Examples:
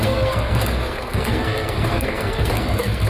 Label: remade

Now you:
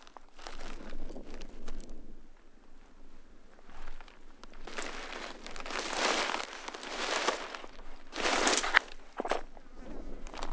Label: recorded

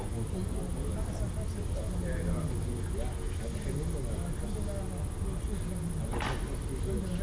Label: recorded